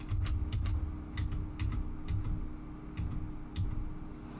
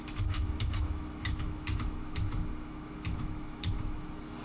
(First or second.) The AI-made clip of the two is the second